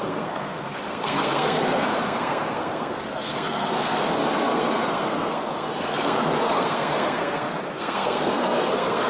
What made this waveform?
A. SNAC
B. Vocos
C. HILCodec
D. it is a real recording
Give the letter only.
A